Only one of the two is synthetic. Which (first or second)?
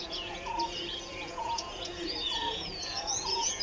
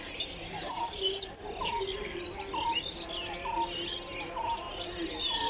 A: first